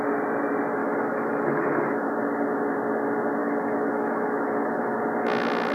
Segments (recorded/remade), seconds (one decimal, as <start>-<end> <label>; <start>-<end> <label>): 0.0-0.8 recorded; 0.8-2.2 remade; 2.2-3.4 recorded; 3.4-5.0 remade; 5.0-5.7 recorded